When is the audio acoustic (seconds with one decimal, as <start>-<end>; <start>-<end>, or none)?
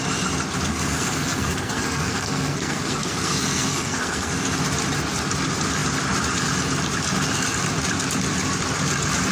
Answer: 0.0-0.7; 4.3-9.3